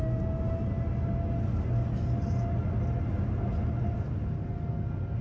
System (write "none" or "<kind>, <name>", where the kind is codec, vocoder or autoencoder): none